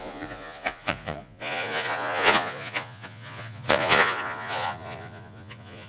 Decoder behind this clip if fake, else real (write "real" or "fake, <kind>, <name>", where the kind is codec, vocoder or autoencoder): fake, vocoder, Vocos